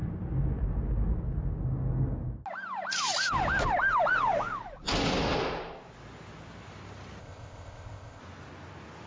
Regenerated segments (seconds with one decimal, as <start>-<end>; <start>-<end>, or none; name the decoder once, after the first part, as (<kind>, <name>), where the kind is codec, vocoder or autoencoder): 7.2-8.2 (codec, ZipCodec)